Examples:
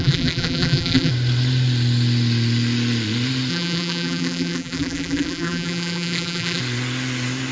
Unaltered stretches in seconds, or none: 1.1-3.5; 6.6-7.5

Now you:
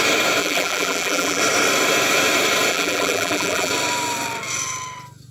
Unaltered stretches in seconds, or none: 0.0-0.4; 1.4-2.7; 3.7-5.3

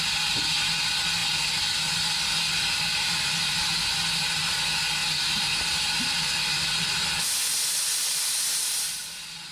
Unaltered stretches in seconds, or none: 0.0-9.5

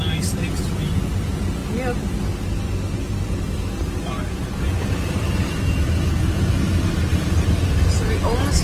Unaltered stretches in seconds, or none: 0.0-7.1; 7.7-8.6

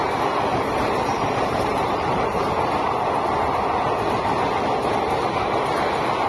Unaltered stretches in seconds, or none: 0.0-0.5; 2.5-6.3

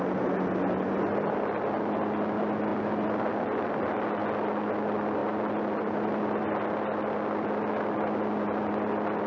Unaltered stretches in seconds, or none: 0.0-9.3